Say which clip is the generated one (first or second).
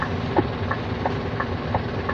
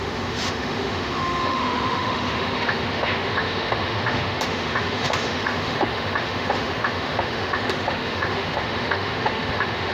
second